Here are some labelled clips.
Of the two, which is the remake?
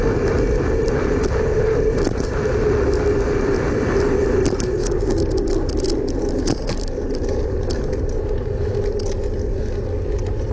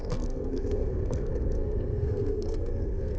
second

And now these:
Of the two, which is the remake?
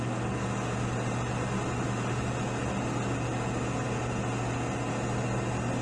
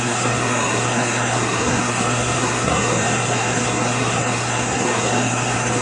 second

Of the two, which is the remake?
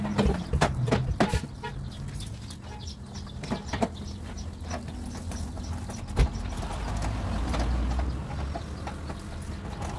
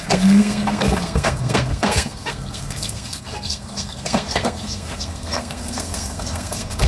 second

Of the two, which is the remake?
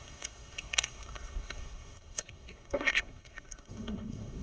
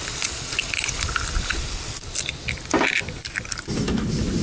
first